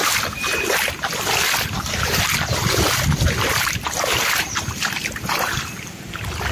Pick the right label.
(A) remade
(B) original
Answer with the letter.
B